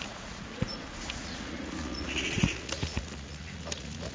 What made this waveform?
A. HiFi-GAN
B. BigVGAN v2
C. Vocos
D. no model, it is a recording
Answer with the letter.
C